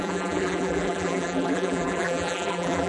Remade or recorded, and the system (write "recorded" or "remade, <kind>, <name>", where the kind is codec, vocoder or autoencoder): remade, vocoder, BigVGAN v2